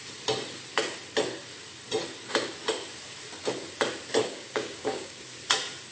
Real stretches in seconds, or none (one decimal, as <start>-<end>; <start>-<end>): 0.0-4.2; 5.2-5.9

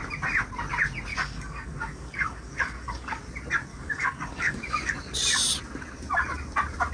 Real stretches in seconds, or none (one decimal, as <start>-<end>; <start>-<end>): 0.0-1.1; 3.2-3.7; 4.9-6.9